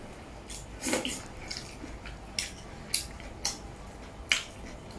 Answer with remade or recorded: recorded